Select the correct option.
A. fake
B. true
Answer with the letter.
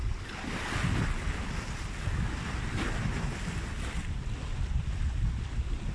B